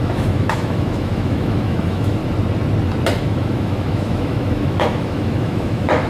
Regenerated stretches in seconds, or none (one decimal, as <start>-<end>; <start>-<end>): 0.0-2.2; 3.2-6.1